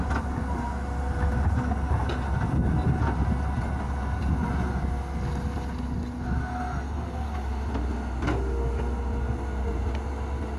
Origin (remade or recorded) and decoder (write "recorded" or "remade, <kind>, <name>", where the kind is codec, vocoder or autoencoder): recorded